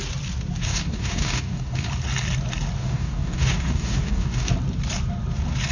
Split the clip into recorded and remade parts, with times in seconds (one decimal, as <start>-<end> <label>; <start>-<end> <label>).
0.0-0.6 recorded; 0.6-1.9 remade; 1.9-2.8 recorded; 2.8-4.5 remade; 4.5-5.7 recorded